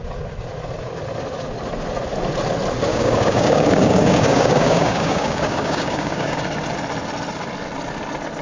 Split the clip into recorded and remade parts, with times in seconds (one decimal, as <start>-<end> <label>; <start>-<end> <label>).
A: 0.0-2.9 recorded; 2.9-6.4 remade; 6.4-8.4 recorded